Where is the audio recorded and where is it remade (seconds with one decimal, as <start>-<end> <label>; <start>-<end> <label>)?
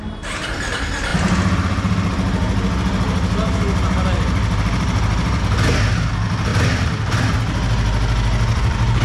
0.0-6.5 recorded; 6.5-7.1 remade; 7.1-8.5 recorded; 8.5-9.0 remade